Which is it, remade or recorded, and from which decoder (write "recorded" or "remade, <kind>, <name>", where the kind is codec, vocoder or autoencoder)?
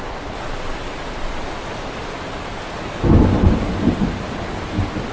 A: recorded